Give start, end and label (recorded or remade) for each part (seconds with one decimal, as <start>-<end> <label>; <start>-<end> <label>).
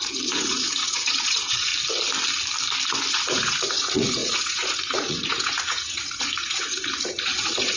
0.0-1.7 remade; 1.7-3.1 recorded; 3.1-7.8 remade